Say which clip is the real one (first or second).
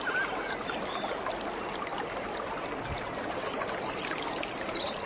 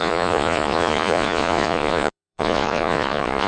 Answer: first